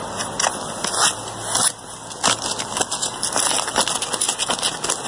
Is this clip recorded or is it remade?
recorded